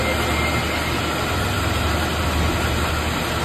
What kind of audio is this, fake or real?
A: real